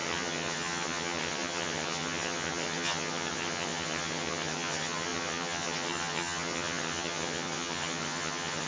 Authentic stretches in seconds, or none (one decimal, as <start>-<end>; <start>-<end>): none